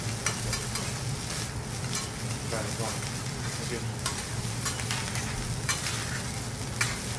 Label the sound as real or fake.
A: real